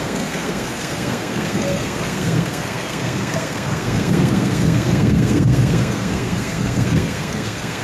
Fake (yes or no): yes